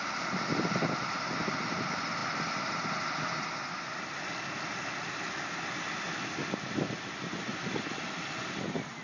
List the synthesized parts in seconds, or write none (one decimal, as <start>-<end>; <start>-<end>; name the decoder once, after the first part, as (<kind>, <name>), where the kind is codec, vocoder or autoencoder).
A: none